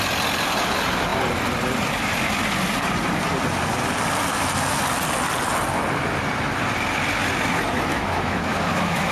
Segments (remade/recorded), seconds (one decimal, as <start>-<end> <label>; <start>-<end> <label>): 0.0-7.9 recorded; 7.9-9.1 remade